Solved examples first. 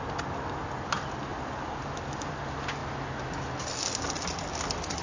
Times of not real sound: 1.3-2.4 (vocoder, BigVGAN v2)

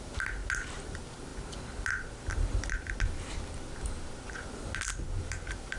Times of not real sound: none

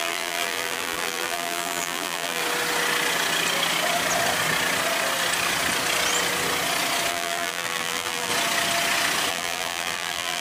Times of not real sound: 0.0-2.4 (vocoder, BigVGAN v2); 7.1-8.3; 9.3-10.4

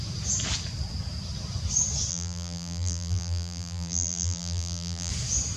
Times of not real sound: 2.1-5.1 (vocoder, BigVGAN v2)

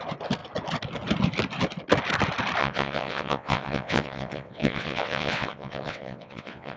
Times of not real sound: 2.6-6.8 (vocoder, WaveNeXt)

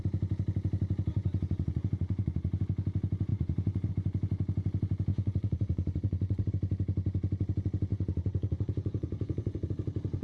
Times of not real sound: 1.1-2.6 (vocoder, Vocos); 3.3-3.9; 5.1-6.5; 7.9-9.7